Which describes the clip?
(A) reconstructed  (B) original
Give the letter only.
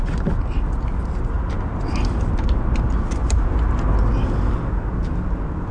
B